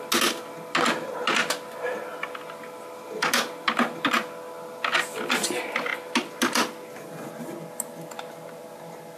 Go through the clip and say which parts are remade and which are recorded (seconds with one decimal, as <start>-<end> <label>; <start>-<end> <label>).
0.0-9.2 recorded